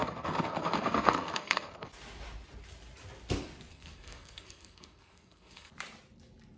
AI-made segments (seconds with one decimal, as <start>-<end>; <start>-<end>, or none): 0.0-1.9; 3.7-5.7